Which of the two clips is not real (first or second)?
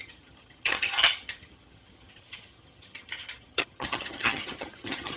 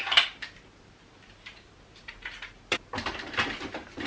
first